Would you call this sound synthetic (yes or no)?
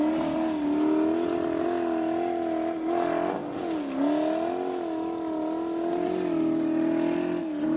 no